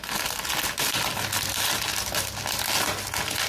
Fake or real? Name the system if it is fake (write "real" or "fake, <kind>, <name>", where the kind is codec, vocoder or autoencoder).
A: real